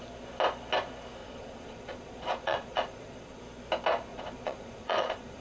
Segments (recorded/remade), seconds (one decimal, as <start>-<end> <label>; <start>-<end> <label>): 0.0-1.2 recorded; 1.2-3.4 remade; 3.4-4.1 recorded; 4.1-5.4 remade